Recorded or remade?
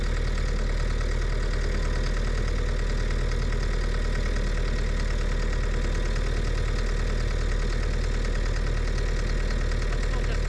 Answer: recorded